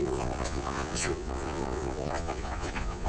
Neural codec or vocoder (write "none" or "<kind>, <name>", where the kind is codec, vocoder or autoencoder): vocoder, Vocos